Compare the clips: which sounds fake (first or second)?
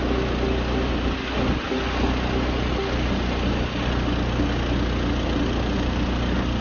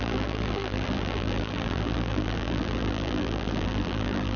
second